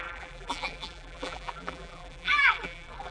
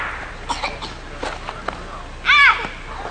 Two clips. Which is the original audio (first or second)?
second